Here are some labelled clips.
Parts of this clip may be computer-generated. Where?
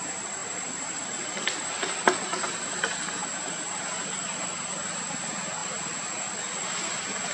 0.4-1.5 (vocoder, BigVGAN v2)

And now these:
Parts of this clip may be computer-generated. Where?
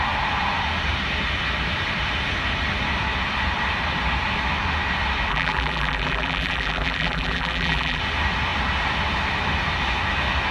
5.3-8.0 (vocoder, BigVGAN v2)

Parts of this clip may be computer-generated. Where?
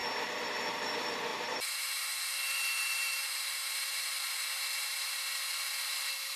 0.7-6.4 (vocoder, BigVGAN v2)